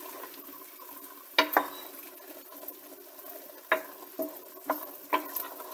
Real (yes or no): yes